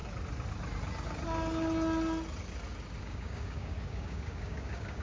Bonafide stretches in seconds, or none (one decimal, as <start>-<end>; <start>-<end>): 0.0-3.0